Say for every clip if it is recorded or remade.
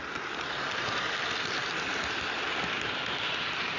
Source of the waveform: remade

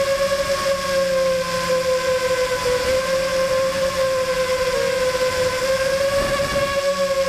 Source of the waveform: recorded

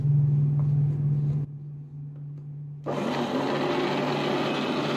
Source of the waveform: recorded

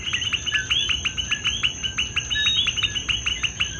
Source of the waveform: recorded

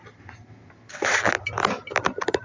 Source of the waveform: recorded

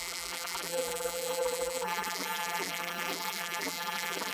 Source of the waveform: remade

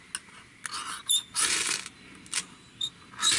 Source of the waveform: recorded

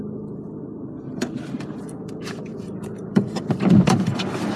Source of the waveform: remade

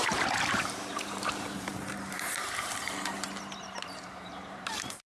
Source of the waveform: remade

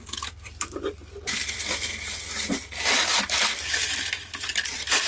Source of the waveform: remade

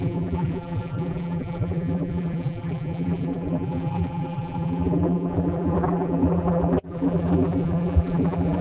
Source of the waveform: remade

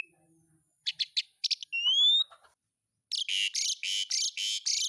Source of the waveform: recorded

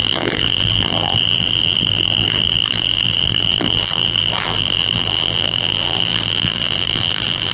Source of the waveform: remade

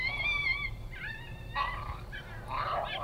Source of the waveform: recorded